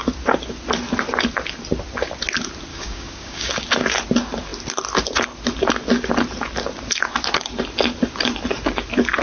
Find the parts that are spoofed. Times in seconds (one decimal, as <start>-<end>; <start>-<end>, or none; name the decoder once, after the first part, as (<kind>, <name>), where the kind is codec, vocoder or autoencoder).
2.7-3.5 (codec, DAC)